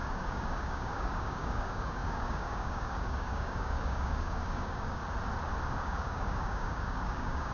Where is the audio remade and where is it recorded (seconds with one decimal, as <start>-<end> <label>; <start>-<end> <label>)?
0.0-5.0 remade; 5.0-5.8 recorded; 5.8-7.5 remade